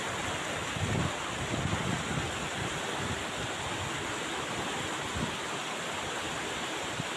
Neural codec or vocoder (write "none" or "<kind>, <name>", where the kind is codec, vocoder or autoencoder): none